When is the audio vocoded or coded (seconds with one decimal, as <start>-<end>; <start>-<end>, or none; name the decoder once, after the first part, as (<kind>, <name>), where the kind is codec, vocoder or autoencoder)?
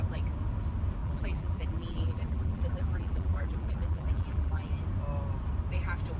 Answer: 1.0-4.7 (vocoder, BigVGAN v2)